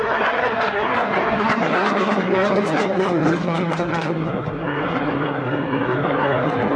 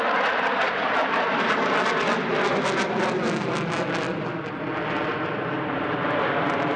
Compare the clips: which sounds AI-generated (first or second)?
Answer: first